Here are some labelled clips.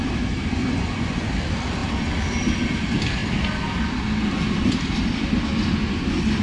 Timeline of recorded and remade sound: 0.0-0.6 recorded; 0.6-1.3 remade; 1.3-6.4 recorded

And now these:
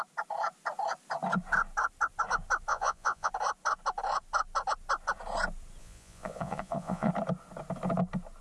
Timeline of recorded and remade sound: 0.0-2.7 recorded; 2.7-3.3 remade; 3.3-5.8 recorded; 5.8-7.1 remade; 7.1-8.4 recorded

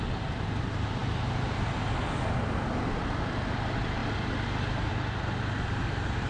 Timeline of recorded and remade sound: 0.0-6.3 recorded

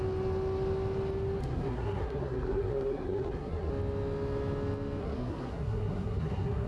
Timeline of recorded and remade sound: 0.0-1.4 recorded; 1.4-3.7 remade; 3.7-5.0 recorded; 5.0-6.7 remade

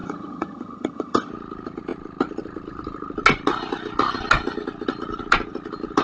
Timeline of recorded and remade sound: 0.0-1.3 remade; 1.3-6.0 recorded

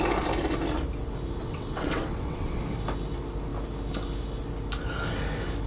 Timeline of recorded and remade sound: 0.0-1.4 recorded; 1.4-2.6 remade; 2.6-5.7 recorded

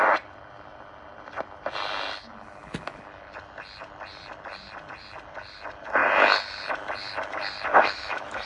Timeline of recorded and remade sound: 0.0-7.7 recorded; 7.7-8.5 remade